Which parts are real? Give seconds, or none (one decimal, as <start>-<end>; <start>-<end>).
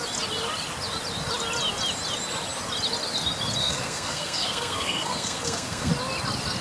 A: 0.0-3.6; 5.9-6.6